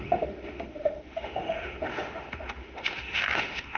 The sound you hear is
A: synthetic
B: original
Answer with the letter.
A